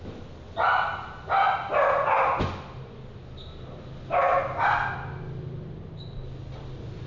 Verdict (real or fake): real